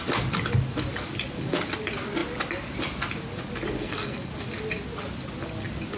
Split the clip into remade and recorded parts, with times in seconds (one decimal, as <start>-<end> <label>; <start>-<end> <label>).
0.0-3.8 recorded; 3.8-4.3 remade; 4.3-6.0 recorded